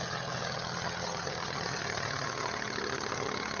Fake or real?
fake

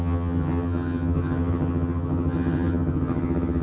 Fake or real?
fake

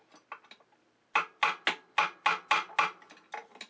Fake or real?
real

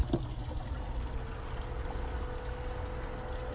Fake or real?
real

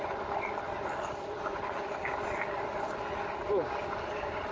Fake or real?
real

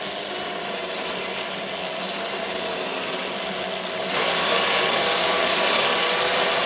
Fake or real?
real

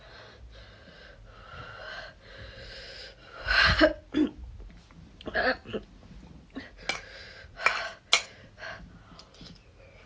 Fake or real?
real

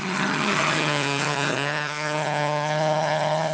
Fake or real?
fake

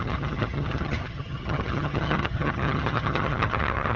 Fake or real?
fake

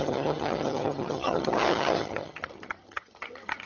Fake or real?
fake